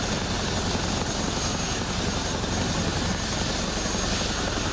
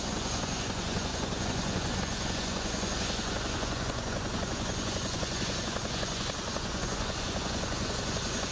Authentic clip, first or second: first